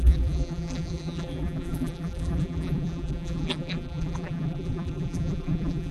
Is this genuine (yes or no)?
no